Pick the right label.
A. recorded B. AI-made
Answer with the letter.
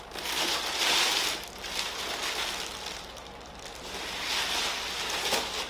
A